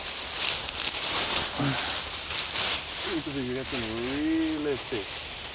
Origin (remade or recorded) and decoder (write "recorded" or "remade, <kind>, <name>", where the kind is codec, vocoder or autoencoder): recorded